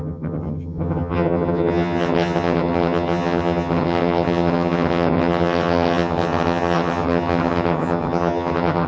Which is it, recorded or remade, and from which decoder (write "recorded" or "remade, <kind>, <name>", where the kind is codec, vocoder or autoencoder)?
remade, vocoder, HiFi-GAN